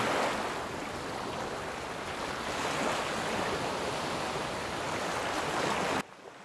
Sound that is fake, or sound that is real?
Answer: real